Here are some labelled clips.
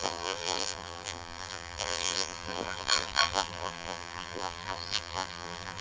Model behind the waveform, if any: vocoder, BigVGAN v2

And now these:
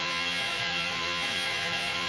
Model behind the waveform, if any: vocoder, Vocos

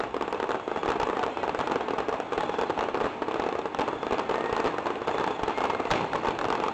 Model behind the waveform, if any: none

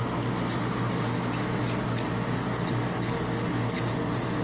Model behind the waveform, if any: none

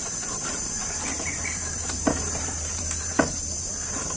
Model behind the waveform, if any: vocoder, BigVGAN v2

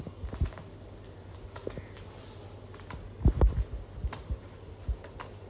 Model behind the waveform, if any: none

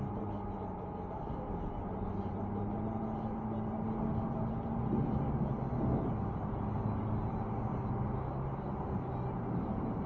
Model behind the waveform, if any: none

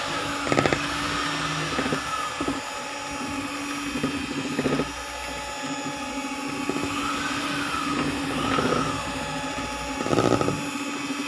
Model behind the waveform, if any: none